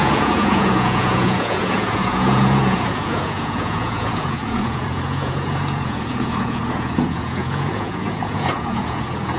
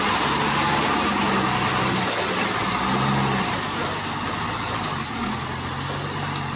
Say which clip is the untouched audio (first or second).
second